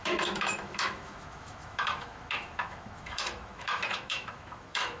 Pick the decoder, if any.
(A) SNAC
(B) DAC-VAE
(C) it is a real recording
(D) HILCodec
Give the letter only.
B